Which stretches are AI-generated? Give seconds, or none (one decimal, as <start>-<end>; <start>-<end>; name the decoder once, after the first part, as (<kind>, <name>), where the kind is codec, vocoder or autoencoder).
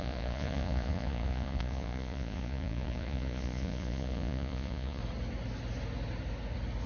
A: 0.0-5.0 (vocoder, Vocos)